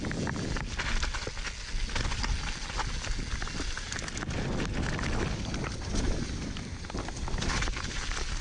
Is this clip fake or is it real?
real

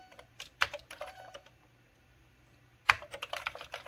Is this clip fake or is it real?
fake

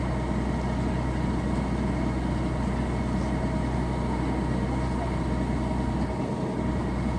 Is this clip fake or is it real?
real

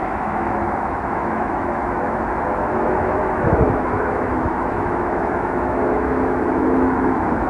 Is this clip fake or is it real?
fake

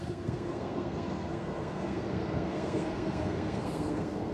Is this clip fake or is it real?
fake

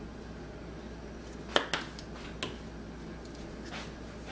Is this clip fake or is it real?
real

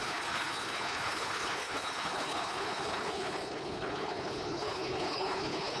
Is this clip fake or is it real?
fake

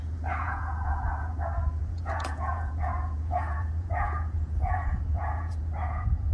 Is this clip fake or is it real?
fake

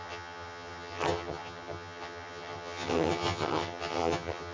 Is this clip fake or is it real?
fake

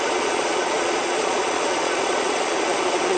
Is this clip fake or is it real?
fake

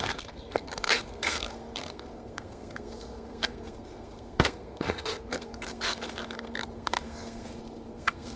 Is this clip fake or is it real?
fake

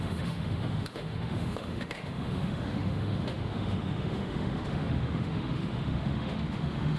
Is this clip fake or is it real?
fake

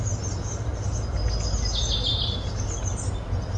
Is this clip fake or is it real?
real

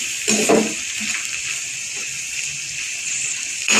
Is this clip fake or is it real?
fake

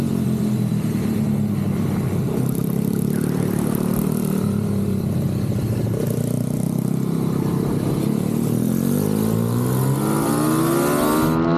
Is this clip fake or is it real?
real